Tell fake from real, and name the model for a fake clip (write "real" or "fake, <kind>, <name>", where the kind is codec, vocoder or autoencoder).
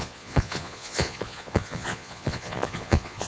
fake, vocoder, Vocos